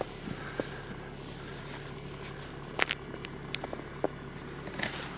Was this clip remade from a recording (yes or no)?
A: no